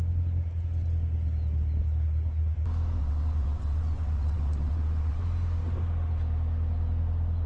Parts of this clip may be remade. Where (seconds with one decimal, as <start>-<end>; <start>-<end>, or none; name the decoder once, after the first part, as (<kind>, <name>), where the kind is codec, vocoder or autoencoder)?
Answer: 3.0-5.2 (vocoder, WaveNeXt)